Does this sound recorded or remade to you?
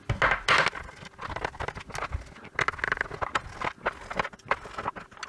recorded